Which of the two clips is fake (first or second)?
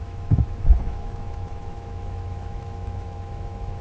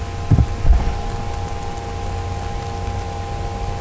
first